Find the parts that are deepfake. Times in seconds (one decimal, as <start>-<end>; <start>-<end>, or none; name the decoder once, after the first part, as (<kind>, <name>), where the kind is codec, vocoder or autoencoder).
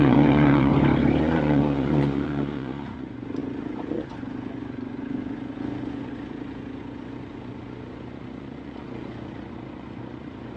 0.0-0.7 (vocoder, Vocos); 1.2-10.6